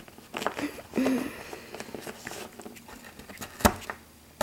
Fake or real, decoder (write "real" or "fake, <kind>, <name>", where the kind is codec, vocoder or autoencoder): real